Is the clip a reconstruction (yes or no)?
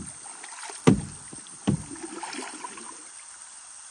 no